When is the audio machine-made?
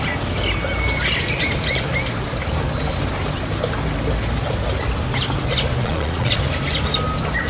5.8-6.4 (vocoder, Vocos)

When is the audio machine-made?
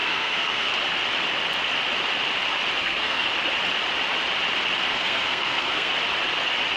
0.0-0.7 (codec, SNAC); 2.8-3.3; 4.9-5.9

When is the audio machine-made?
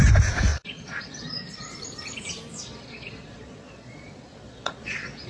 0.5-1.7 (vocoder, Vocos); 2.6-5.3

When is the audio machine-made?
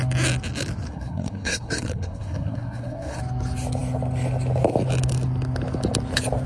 0.9-3.2 (codec, SNAC)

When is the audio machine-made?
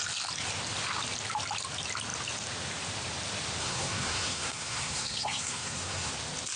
3.6-6.1 (codec, SNAC)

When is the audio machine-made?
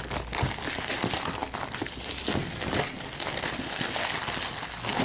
none